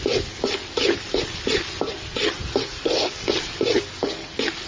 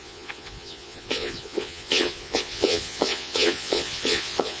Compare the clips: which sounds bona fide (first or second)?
first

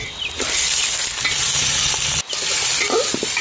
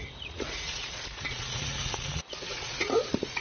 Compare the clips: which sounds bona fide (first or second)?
first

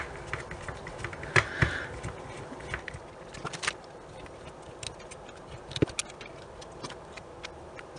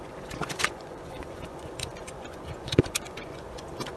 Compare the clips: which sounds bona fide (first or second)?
first